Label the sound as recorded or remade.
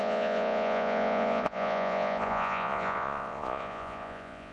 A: remade